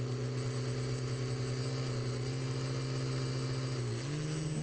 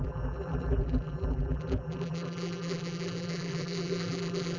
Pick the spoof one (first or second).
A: second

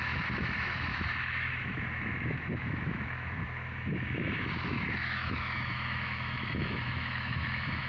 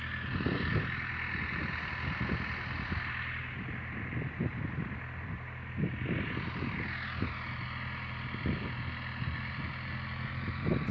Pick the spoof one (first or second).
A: first